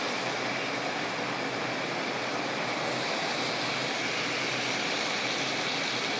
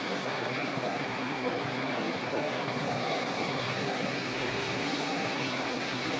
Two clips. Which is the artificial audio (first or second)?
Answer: second